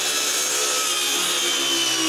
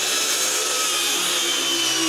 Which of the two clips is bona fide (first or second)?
first